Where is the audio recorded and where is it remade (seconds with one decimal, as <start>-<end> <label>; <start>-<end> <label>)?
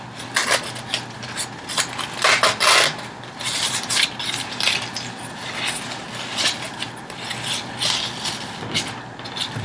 0.0-9.6 recorded